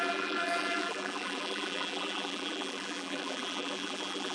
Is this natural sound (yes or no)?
no